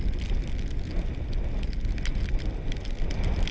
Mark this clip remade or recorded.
recorded